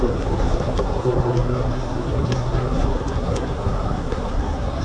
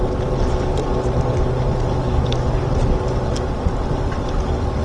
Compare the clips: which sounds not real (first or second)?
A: first